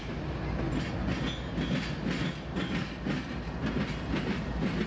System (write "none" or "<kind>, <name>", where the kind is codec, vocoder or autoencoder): none